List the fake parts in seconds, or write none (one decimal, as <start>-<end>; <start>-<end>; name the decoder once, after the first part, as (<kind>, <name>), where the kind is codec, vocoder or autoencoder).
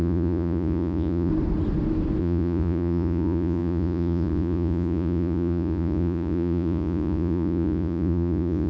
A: 0.0-1.3 (vocoder, Vocos); 2.2-8.7